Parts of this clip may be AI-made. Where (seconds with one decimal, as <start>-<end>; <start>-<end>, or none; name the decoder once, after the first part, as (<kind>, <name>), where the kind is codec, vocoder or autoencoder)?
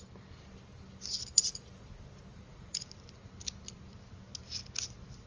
2.3-2.8 (vocoder, Vocos)